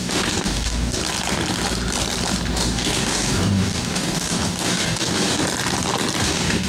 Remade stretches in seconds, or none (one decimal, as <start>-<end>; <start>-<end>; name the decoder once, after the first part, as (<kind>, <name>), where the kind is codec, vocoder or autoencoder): 0.0-1.0 (codec, DAC); 2.5-5.4; 6.2-6.7